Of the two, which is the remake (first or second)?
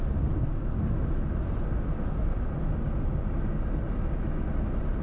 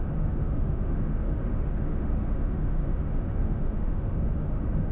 second